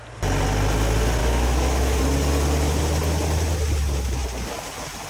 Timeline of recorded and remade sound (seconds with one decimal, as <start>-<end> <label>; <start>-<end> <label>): 0.0-1.2 recorded; 1.2-2.0 remade; 2.0-5.1 recorded